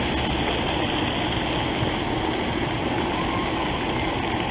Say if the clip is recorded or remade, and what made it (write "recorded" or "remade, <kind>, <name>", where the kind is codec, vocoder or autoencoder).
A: recorded